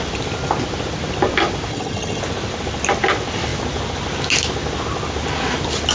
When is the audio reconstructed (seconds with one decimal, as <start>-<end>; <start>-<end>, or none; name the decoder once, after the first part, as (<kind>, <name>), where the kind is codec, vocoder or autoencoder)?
1.7-2.2 (vocoder, HiFi-GAN)